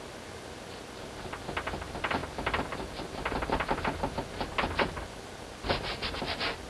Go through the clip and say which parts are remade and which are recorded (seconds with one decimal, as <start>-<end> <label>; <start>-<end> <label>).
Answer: 0.0-6.7 recorded